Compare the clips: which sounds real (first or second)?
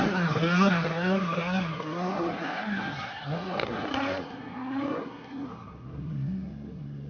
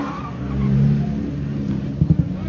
second